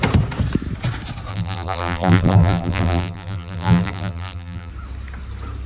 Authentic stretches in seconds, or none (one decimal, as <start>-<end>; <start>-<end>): 0.0-1.3; 4.7-5.7